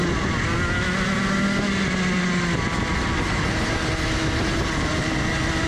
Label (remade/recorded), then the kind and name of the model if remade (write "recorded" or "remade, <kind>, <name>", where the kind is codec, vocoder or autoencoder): recorded